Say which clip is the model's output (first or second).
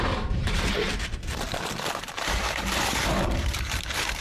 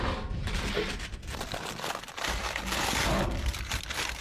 first